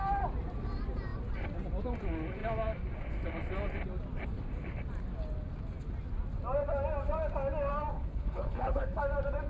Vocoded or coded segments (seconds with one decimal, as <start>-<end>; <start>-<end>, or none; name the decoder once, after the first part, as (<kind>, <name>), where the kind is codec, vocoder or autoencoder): 7.9-9.0 (codec, HILCodec)